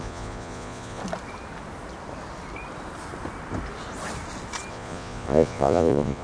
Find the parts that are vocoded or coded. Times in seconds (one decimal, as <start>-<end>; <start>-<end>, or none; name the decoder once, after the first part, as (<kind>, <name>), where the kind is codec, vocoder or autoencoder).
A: 0.0-1.0 (vocoder, Vocos); 4.7-6.2